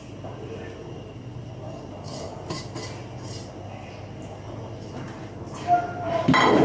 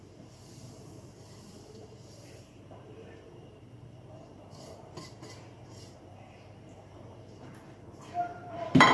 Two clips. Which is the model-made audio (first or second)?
second